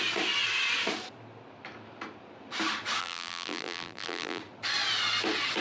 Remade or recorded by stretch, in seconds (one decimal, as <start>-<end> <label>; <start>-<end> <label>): 0.0-3.0 recorded; 3.0-4.4 remade; 4.4-5.6 recorded